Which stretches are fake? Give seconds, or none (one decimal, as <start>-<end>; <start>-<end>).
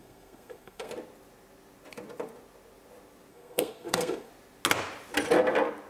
0.0-0.9; 3.3-4.3